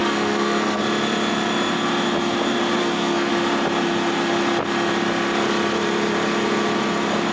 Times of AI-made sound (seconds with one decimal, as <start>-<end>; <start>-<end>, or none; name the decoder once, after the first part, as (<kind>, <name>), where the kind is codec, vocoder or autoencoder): 0.0-0.8 (codec, SNAC); 2.8-3.3

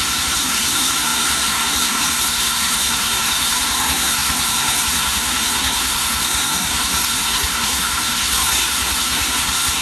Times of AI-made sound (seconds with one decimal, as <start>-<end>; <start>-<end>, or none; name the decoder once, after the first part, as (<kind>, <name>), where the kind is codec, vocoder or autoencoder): 0.0-9.8 (codec, SNAC)

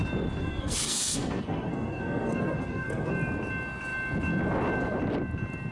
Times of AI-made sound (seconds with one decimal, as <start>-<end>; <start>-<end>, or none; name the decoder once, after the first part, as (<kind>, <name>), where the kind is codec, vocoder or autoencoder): 0.4-3.1 (codec, SNAC)

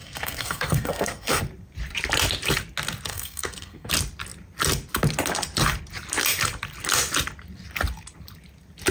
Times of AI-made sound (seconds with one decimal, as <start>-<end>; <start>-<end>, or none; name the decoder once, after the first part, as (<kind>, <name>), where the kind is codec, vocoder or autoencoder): 0.0-1.4 (codec, SNAC); 3.1-3.9

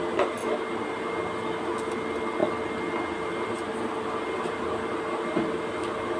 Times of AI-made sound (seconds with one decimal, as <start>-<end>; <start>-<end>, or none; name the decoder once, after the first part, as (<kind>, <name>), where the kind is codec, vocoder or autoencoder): none

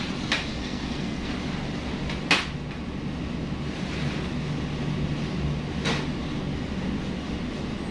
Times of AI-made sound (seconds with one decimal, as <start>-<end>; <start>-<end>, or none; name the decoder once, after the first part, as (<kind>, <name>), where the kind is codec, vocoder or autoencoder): 0.5-1.3 (codec, SNAC)

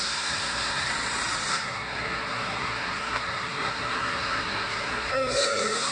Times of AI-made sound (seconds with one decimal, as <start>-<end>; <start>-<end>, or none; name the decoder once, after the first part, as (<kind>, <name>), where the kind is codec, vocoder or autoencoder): 0.0-0.9 (codec, SNAC); 1.5-5.9